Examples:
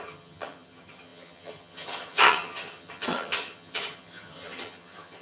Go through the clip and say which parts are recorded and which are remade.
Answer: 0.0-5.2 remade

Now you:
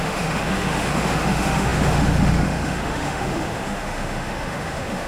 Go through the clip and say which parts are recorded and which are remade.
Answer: 0.0-5.1 remade

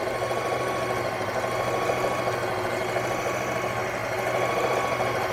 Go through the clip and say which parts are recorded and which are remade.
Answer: 0.0-5.3 recorded